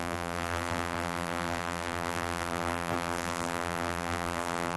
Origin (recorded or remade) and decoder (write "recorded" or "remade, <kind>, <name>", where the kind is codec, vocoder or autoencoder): remade, vocoder, BigVGAN v2